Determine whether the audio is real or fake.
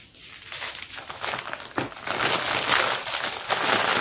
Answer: real